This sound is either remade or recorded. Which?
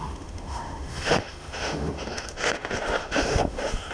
remade